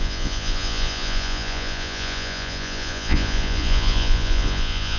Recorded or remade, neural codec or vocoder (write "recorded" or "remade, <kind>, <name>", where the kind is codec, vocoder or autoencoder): remade, vocoder, Vocos